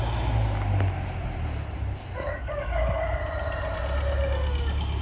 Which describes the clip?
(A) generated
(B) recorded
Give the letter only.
B